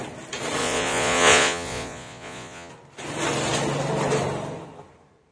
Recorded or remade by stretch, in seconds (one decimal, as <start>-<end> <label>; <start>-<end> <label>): 0.0-0.6 recorded; 0.6-2.7 remade; 2.7-5.3 recorded